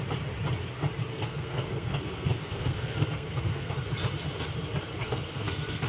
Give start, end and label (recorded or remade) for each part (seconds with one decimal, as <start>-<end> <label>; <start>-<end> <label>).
0.0-1.1 recorded; 1.1-3.7 remade; 3.7-5.0 recorded; 5.0-5.9 remade